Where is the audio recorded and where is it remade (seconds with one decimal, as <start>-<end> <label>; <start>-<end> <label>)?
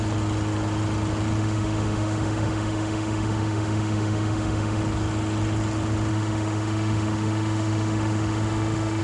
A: 0.0-1.4 recorded; 1.4-4.8 remade; 4.8-6.1 recorded; 6.1-9.0 remade